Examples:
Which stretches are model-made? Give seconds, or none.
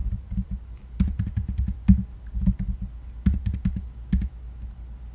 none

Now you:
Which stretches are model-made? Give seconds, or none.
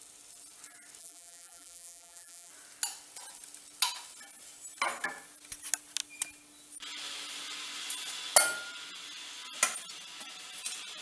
1.0-2.5 (vocoder, BigVGAN v2)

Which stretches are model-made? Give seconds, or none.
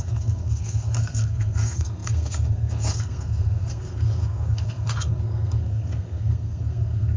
0.0-7.2 (codec, SNAC)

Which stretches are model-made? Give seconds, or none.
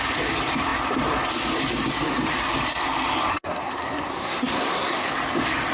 3.3-5.1 (codec, SNAC)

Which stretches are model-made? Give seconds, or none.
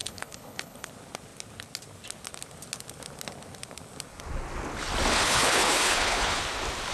0.0-0.9 (codec, HILCodec); 5.1-6.4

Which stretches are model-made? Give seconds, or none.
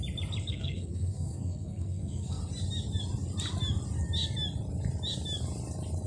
0.5-2.4 (codec, SNAC)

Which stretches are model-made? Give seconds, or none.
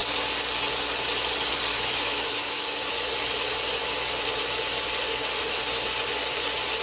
1.7-2.6 (autoencoder, DAC-VAE)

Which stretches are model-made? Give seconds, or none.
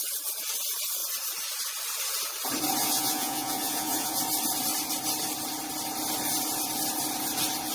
2.8-4.2 (vocoder, Vocos)